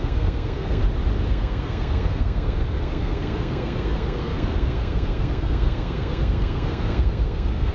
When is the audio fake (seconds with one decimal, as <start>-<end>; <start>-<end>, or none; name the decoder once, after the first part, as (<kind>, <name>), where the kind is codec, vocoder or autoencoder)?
0.0-0.8 (codec, SNAC); 1.3-7.7